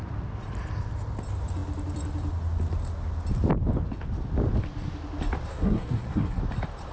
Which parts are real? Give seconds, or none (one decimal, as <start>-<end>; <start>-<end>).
0.0-5.5; 6.4-6.9